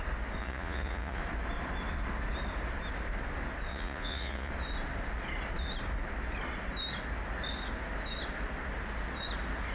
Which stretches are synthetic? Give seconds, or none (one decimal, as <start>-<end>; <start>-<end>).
0.4-1.2; 3.7-4.5